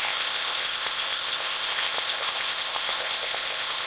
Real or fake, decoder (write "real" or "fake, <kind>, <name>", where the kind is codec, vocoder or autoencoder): fake, codec, ZipCodec